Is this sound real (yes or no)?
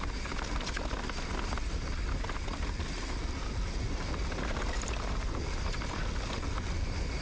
yes